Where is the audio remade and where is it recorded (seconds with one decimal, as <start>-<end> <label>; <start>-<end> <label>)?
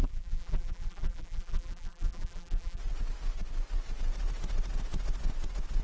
0.0-2.8 remade; 2.8-5.8 recorded